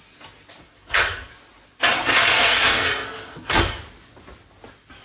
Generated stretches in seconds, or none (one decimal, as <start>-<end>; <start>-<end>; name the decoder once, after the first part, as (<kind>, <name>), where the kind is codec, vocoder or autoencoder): 0.6-1.3 (codec, SNAC); 2.1-3.8